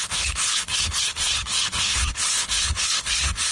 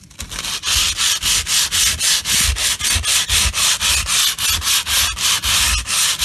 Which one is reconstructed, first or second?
first